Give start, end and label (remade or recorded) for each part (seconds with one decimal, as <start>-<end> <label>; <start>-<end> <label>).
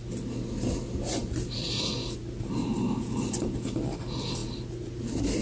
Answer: 0.0-5.4 recorded